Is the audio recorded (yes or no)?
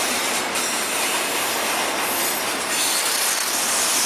yes